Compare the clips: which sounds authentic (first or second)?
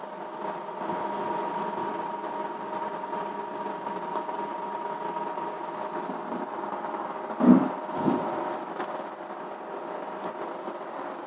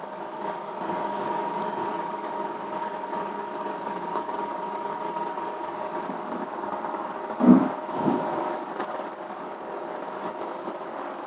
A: first